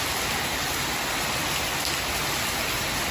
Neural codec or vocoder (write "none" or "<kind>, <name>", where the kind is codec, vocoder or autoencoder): none